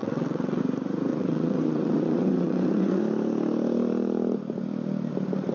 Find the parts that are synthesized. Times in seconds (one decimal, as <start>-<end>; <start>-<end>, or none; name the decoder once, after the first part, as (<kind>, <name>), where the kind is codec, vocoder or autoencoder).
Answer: 0.0-0.6 (vocoder, WaveNeXt); 1.1-3.0